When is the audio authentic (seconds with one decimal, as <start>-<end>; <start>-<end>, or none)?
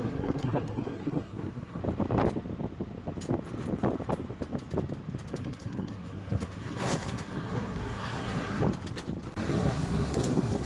1.8-5.3; 8.6-9.5